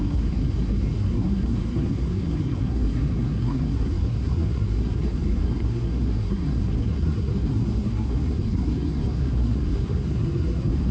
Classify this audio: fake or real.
fake